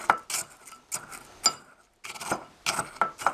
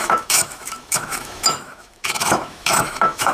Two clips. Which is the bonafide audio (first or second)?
first